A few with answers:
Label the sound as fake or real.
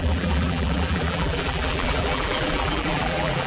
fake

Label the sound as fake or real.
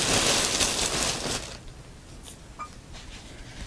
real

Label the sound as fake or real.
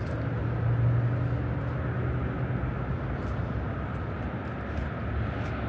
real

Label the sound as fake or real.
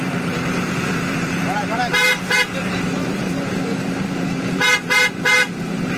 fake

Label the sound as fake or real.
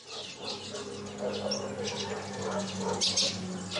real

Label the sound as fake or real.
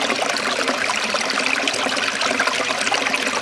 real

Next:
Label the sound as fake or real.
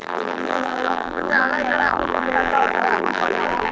fake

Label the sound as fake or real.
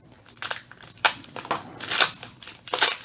real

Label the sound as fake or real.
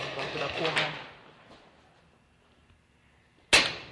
real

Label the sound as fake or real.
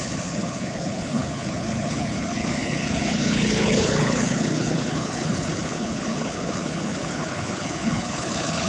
fake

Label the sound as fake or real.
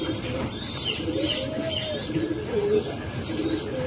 fake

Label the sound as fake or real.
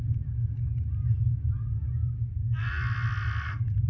real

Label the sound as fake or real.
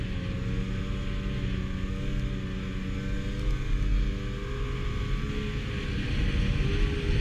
real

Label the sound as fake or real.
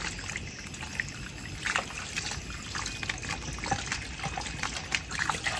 real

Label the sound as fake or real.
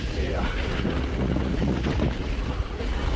fake